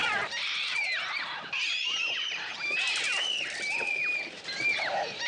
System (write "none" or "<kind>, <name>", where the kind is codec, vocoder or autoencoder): vocoder, BigVGAN v2